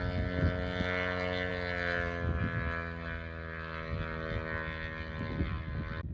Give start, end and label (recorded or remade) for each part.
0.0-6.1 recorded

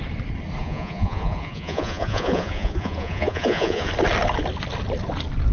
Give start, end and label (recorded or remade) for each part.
0.0-0.6 recorded; 0.6-3.9 remade; 3.9-5.5 recorded

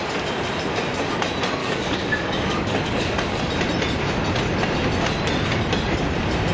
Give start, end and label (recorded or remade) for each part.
0.0-1.6 recorded; 1.6-3.4 remade; 3.4-6.5 recorded

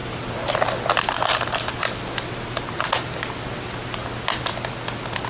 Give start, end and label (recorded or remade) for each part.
0.0-5.3 recorded